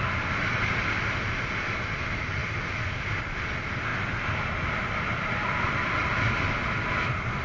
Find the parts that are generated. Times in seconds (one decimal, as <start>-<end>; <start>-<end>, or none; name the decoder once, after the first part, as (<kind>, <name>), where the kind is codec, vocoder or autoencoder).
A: none

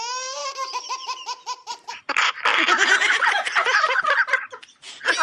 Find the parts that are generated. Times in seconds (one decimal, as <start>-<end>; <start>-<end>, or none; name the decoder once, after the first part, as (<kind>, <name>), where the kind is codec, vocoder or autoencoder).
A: 0.4-1.9 (vocoder, BigVGAN v2); 2.5-4.0

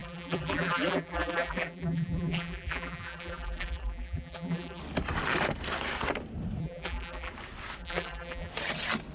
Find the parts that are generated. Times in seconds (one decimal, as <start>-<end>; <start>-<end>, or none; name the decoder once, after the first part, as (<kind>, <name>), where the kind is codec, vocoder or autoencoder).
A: 0.0-4.8 (vocoder, BigVGAN v2); 6.6-7.3; 7.8-8.5